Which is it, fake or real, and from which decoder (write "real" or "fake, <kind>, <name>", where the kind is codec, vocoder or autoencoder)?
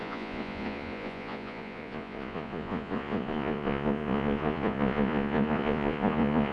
fake, vocoder, Vocos